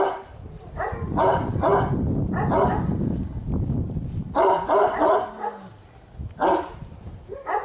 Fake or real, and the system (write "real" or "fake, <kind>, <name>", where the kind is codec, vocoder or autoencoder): real